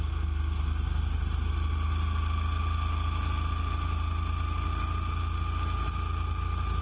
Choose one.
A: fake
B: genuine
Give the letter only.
B